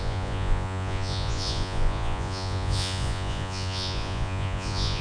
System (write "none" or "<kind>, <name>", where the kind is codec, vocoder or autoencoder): vocoder, Vocos